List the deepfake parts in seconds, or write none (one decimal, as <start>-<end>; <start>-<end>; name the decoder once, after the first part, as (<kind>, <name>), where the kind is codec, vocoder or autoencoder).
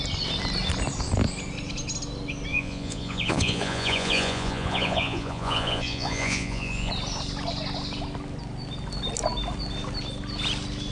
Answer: 2.5-6.9 (vocoder, Vocos)